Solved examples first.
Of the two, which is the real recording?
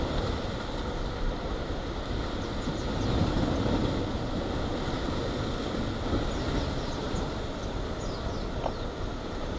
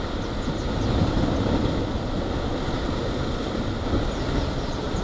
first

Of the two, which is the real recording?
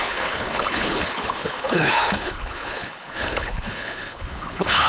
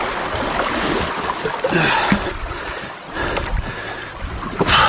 second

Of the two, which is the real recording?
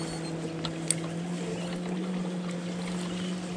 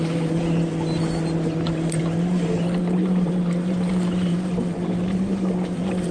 first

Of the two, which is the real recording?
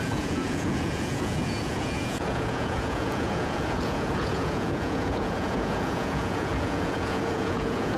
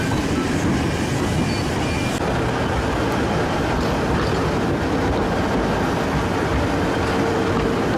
second